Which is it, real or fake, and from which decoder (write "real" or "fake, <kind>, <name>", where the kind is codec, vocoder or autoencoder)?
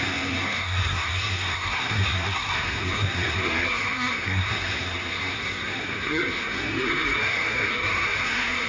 fake, codec, SNAC